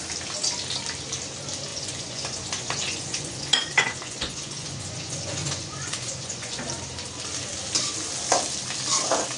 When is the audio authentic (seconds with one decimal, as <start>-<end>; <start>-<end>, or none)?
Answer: 0.0-1.7; 6.6-9.4